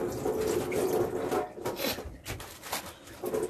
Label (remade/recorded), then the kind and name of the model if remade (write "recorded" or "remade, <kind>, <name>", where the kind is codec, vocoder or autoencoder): recorded